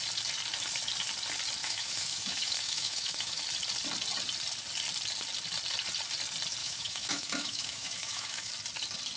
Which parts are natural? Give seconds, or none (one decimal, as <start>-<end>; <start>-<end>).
0.0-1.6; 3.4-6.6; 8.5-9.2